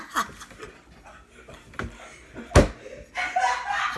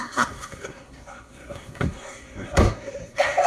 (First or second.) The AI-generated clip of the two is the second